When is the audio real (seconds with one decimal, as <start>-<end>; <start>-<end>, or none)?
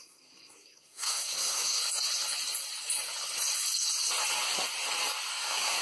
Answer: 1.8-5.3